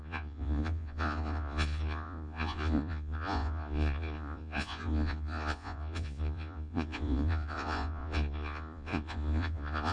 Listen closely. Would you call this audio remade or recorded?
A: remade